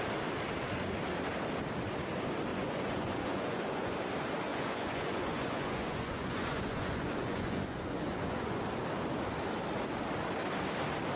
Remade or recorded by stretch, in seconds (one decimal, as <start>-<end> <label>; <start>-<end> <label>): 0.0-2.5 recorded; 2.5-3.9 remade; 3.9-4.5 recorded; 4.5-8.6 remade; 8.6-11.2 recorded